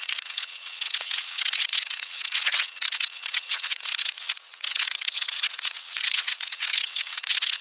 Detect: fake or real fake